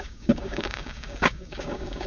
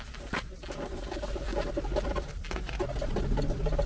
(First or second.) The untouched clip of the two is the second